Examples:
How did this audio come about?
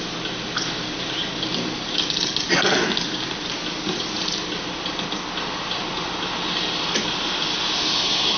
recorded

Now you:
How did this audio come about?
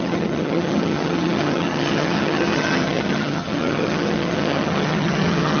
remade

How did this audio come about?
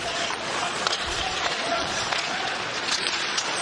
remade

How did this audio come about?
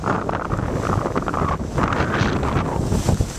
recorded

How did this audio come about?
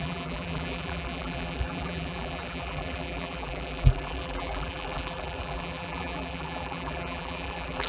remade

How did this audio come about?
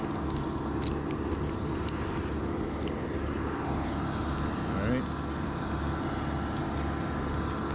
recorded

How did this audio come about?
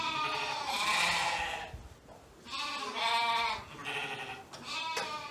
recorded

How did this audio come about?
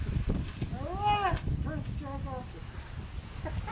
recorded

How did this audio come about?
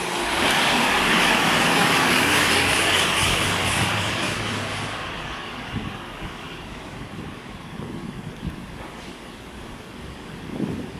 remade